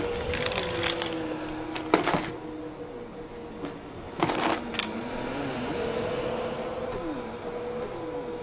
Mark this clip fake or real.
real